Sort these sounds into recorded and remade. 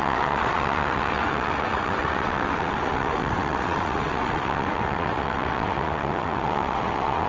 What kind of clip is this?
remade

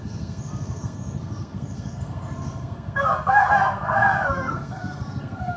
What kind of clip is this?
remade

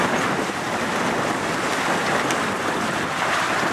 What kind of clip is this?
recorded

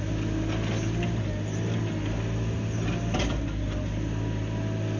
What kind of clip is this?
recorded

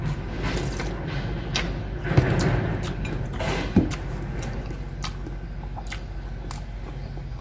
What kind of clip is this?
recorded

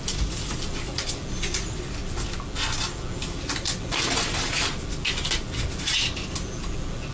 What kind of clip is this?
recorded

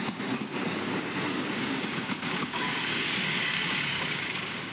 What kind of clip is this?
remade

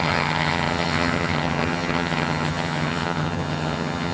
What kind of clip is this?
remade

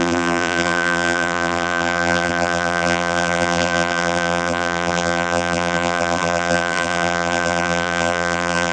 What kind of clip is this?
remade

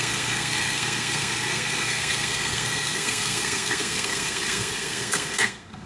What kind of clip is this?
remade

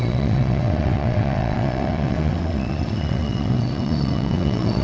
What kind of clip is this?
remade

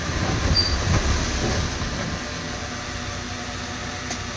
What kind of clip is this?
recorded